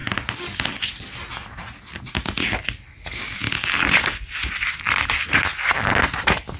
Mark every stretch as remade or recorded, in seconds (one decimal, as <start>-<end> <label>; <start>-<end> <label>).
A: 0.0-6.6 recorded